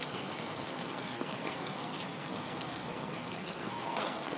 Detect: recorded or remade remade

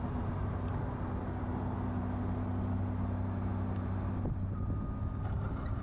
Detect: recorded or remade recorded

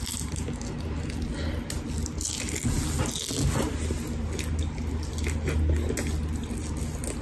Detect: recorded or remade recorded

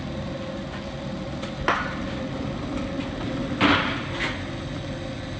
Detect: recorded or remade recorded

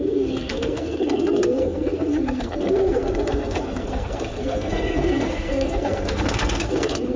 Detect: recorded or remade remade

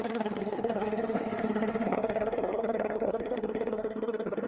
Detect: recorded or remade remade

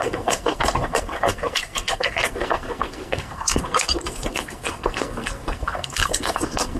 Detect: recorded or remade remade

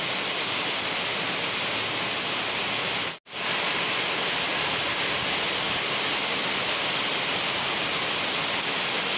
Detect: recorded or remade recorded